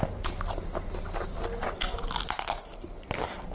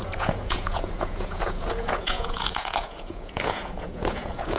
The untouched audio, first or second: first